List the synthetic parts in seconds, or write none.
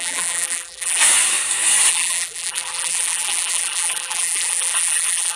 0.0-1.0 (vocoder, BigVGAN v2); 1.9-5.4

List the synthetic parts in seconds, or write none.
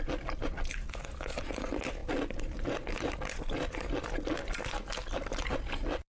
2.0-2.6 (vocoder, BigVGAN v2)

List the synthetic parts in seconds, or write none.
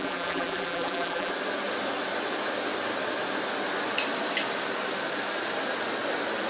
0.0-1.3 (vocoder, BigVGAN v2)